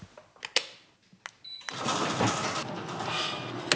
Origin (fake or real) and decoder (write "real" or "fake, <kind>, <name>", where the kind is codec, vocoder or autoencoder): real